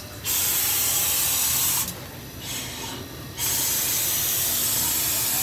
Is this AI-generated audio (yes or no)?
no